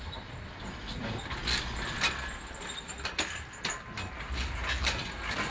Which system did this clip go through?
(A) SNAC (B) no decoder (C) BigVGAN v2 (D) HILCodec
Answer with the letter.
B